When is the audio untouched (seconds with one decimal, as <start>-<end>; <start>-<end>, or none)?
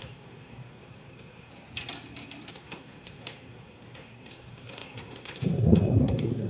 1.5-2.5